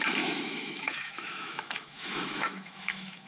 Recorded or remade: remade